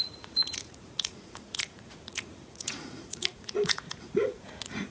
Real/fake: fake